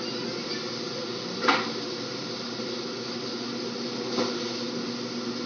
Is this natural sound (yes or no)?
yes